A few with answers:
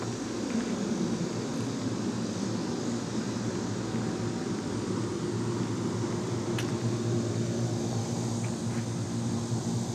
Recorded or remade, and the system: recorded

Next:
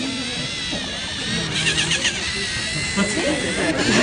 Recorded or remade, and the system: recorded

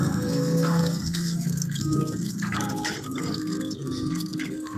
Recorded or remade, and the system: remade, codec, SNAC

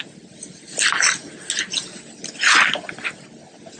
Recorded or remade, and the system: recorded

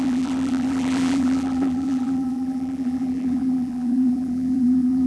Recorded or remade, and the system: remade, vocoder, BigVGAN v2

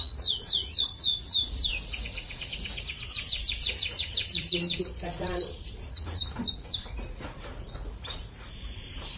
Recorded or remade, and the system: remade, vocoder, Vocos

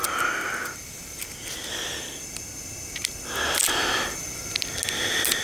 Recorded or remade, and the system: recorded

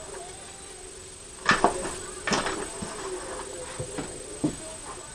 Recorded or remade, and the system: recorded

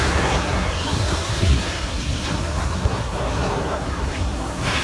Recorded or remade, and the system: remade, codec, SNAC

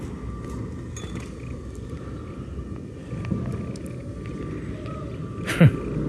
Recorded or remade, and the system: recorded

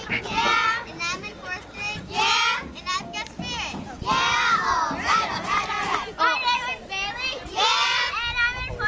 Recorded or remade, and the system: recorded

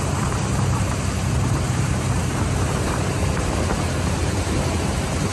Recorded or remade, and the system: remade, vocoder, BigVGAN v2